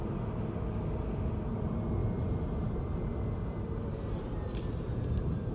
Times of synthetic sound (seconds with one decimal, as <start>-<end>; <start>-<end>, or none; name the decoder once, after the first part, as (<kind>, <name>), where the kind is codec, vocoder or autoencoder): 2.0-5.5 (vocoder, BigVGAN v2)

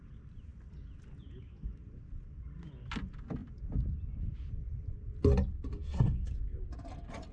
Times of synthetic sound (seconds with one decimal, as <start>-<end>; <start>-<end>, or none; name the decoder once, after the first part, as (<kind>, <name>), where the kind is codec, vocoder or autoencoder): 5.7-6.3 (codec, SNAC)

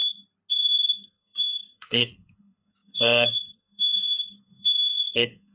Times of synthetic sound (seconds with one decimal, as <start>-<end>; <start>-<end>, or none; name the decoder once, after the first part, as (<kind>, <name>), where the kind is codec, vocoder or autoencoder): 0.5-5.5 (codec, SNAC)